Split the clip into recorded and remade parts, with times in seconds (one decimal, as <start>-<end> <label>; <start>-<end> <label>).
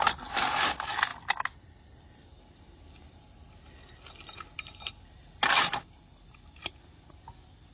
0.0-7.7 recorded